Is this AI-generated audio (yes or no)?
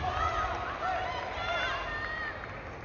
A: no